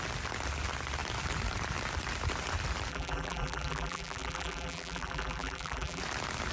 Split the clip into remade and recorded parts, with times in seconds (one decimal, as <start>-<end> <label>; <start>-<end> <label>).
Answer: 0.0-2.9 recorded; 2.9-6.0 remade; 6.0-6.5 recorded

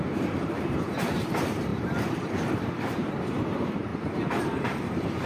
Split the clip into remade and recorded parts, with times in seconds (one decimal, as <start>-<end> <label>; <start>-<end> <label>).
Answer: 0.0-3.9 remade; 3.9-4.4 recorded; 4.4-5.3 remade

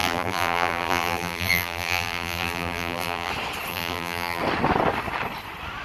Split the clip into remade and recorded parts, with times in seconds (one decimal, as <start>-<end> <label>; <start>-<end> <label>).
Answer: 0.0-3.3 remade; 3.3-3.7 recorded; 3.7-4.4 remade; 4.4-5.8 recorded

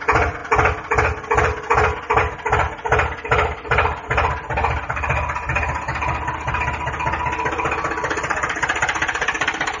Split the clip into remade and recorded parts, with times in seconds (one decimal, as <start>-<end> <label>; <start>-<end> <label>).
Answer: 0.0-9.8 recorded

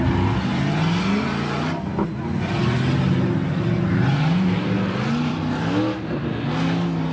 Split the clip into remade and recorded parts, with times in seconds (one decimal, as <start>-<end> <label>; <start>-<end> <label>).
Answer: 0.0-4.1 recorded; 4.1-5.4 remade; 5.4-7.1 recorded

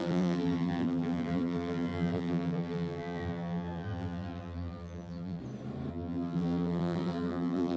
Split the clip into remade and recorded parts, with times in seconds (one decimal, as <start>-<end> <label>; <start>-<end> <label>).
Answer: 0.0-5.4 remade; 5.4-5.9 recorded; 5.9-7.8 remade

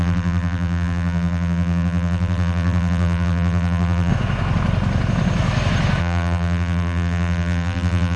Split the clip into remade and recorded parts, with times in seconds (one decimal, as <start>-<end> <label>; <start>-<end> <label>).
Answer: 0.0-4.1 remade; 4.1-6.0 recorded; 6.0-8.2 remade